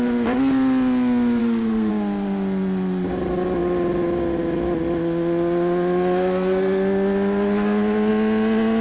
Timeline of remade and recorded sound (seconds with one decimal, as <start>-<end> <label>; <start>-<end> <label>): 0.0-1.4 recorded; 1.4-1.9 remade; 1.9-8.8 recorded